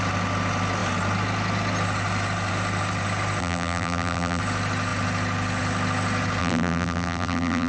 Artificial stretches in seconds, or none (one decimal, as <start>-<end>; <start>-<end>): 3.4-4.4; 6.4-7.7